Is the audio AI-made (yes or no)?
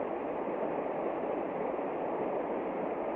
no